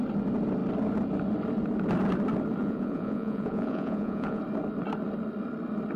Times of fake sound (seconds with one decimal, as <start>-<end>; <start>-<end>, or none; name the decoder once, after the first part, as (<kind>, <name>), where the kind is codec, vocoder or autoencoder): 2.6-4.4 (vocoder, Vocos)